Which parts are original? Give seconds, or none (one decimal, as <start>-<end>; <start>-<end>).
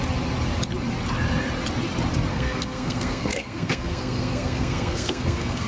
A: 0.0-2.3